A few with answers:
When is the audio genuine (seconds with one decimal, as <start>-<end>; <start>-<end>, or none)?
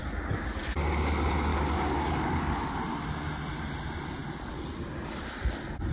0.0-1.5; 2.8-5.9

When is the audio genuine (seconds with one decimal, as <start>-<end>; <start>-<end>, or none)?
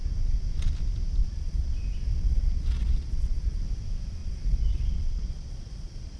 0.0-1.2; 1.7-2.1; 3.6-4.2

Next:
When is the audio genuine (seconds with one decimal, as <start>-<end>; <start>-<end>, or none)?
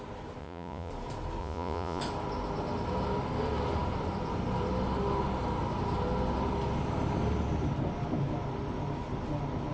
0.0-0.4; 0.9-1.4; 2.0-9.7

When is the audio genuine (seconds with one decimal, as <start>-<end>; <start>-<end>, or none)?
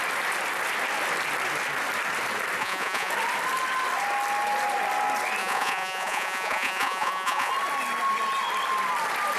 0.0-2.6; 3.1-5.4; 7.5-9.4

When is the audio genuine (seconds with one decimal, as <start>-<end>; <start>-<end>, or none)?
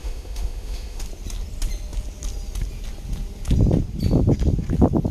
1.0-5.1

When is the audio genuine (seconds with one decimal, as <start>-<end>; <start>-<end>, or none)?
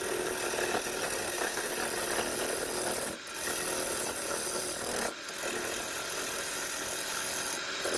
0.0-1.2; 1.7-8.0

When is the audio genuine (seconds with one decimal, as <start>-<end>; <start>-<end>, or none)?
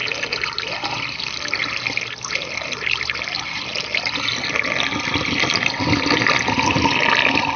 0.0-7.6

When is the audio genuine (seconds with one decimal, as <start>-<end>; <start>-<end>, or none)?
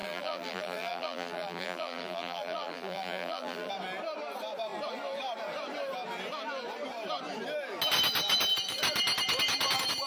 3.7-10.1